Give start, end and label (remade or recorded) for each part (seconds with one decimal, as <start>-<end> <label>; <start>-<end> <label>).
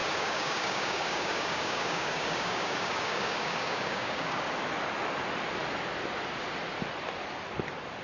0.0-4.4 remade; 4.4-8.0 recorded